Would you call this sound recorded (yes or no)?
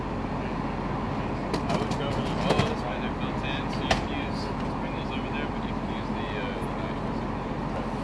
yes